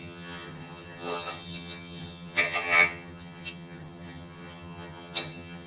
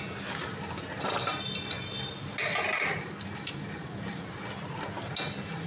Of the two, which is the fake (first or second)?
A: first